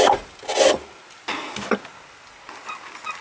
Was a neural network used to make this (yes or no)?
no